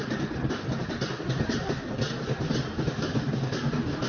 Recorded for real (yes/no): yes